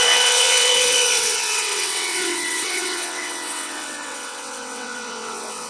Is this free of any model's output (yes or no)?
no